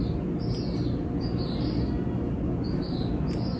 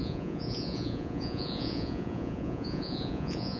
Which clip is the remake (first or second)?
second